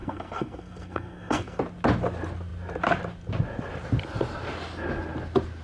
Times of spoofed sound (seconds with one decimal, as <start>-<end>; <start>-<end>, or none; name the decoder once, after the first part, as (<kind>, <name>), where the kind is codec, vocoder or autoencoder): 0.0-1.6 (codec, SNAC)